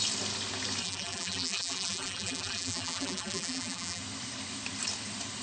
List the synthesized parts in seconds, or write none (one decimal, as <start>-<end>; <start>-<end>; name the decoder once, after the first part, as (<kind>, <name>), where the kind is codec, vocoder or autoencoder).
0.8-4.0 (vocoder, BigVGAN v2)